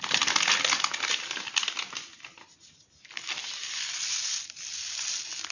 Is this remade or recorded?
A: recorded